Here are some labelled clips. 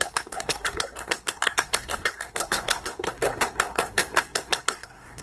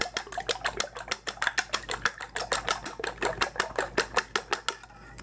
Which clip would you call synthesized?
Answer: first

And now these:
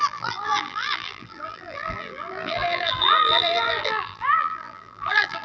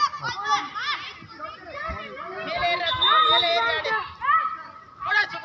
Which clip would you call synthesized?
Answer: first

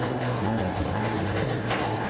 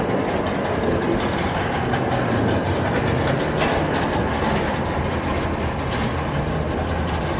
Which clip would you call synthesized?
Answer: first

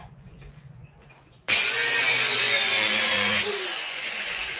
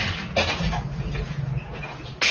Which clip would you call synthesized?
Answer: first